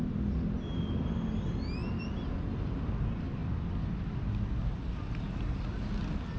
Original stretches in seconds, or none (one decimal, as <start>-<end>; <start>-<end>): 0.0-6.4